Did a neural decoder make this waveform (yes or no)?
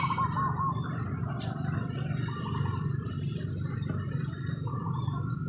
no